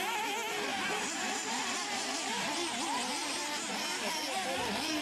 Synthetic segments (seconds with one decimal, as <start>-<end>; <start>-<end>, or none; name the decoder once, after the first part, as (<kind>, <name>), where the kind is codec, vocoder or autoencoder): 0.7-3.2 (vocoder, BigVGAN v2)

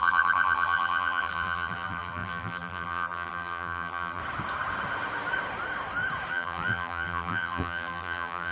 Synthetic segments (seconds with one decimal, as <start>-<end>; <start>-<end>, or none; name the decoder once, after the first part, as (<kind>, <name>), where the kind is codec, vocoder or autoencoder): 0.0-4.2 (vocoder, BigVGAN v2); 6.3-8.5